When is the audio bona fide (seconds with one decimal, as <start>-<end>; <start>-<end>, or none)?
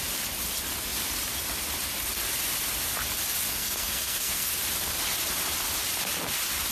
0.0-3.5; 4.5-6.7